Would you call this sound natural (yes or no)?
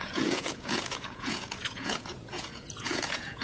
no